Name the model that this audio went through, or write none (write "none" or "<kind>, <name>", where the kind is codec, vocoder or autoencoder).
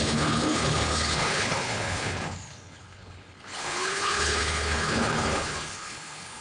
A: codec, HILCodec